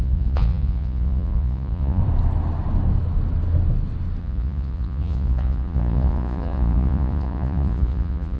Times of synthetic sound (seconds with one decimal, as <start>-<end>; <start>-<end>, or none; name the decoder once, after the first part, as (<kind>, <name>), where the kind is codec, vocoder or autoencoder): 0.0-2.0 (vocoder, Vocos); 4.2-8.4